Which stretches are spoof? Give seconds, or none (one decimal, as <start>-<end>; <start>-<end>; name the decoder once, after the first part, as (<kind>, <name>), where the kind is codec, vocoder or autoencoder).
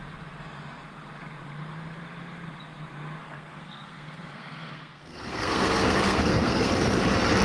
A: 3.2-6.7 (codec, SNAC)